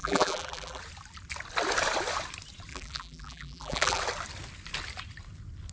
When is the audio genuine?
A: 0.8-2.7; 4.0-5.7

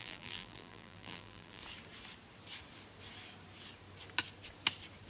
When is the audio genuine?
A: 1.6-5.1

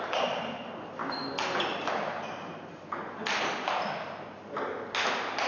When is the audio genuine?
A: 0.0-5.5

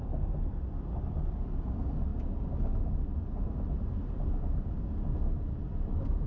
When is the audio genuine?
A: 0.0-6.3

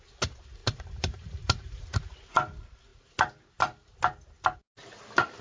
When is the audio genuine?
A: 0.0-0.6; 2.0-5.4

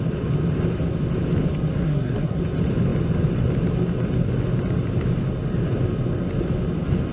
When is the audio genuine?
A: 0.0-1.8; 2.4-7.1

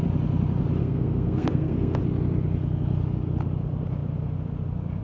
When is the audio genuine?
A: 0.0-0.8; 2.0-5.0

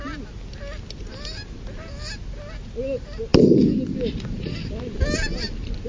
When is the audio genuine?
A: 0.0-5.9